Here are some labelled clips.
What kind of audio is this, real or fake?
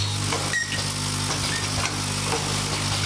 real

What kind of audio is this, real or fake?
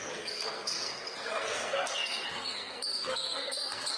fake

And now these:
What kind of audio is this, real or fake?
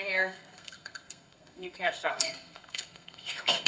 fake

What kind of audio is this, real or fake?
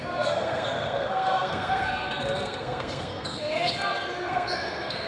fake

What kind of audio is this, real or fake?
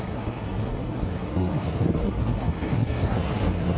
fake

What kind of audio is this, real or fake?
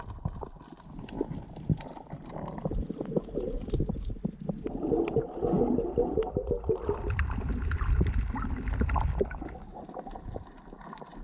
real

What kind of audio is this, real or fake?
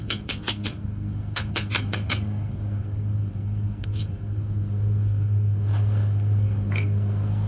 fake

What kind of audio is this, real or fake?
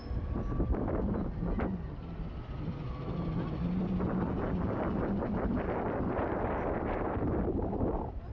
real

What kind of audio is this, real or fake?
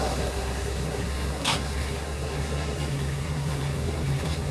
fake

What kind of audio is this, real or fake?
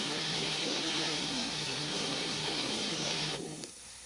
fake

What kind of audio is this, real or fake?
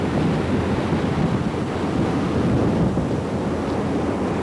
real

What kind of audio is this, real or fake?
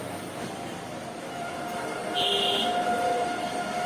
real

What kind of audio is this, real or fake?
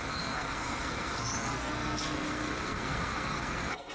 fake